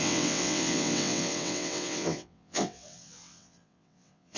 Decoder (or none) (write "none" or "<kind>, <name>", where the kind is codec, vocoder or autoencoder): vocoder, WaveNeXt